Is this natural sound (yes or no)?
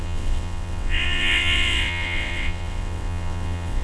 no